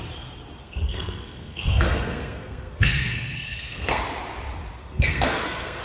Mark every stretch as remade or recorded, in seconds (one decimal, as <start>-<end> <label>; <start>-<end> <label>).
0.0-0.6 recorded; 0.6-4.0 remade; 4.0-4.8 recorded; 4.8-5.8 remade